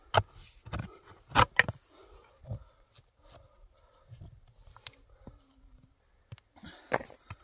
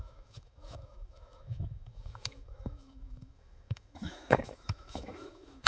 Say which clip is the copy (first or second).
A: second